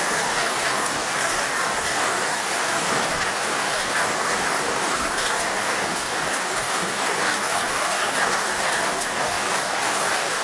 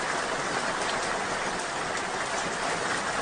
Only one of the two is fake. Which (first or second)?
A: first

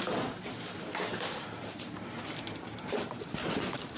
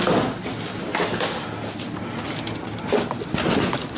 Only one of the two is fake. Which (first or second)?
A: first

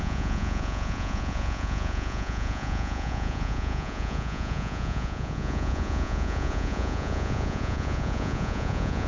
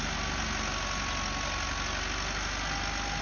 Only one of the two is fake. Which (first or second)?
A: first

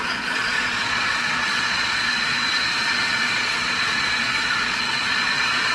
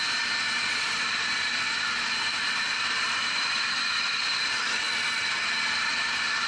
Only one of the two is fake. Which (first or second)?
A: first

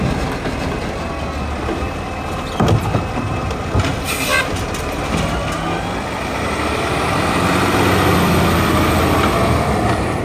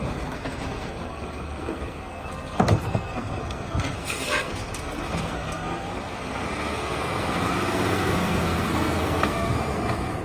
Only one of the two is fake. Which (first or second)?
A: second